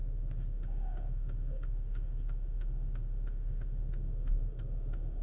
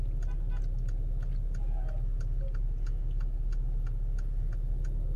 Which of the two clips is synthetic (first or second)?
first